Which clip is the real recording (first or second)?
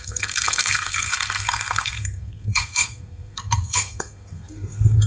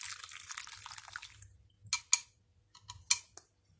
second